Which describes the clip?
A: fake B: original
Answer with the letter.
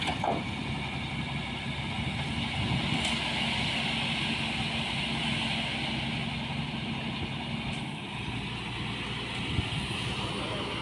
B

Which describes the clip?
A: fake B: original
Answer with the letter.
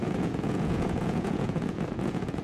A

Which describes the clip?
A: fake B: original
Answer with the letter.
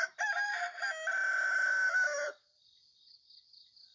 B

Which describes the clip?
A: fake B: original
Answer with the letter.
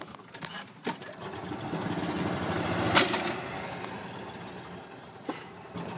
B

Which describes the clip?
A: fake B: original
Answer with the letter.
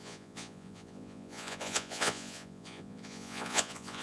A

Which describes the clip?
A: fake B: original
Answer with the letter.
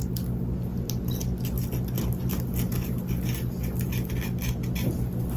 B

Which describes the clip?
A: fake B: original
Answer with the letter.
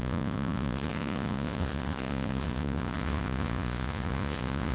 A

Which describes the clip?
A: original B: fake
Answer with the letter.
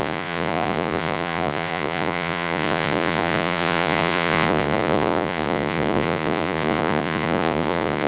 B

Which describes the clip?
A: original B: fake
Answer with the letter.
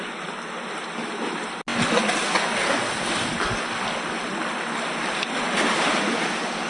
A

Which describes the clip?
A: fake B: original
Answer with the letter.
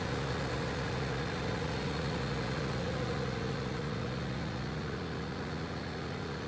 A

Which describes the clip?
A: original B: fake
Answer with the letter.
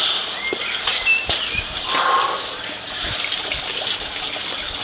A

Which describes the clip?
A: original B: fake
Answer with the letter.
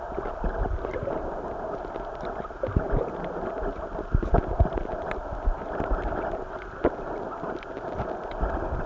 A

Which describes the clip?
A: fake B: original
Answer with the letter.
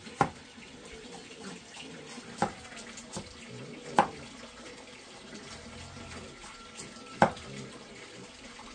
B